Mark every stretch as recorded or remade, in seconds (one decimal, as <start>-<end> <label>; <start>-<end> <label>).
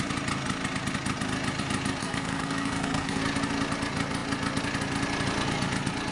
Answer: 0.0-2.0 recorded; 2.0-3.2 remade; 3.2-6.1 recorded